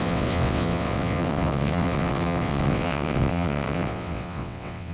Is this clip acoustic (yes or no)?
no